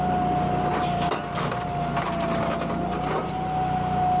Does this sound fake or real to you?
real